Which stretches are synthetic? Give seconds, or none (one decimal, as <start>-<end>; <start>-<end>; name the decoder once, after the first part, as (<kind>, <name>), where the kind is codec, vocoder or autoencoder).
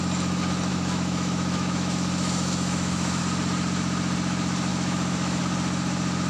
0.7-3.2 (autoencoder, DAC-VAE); 4.7-5.4